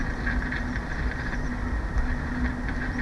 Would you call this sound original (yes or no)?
yes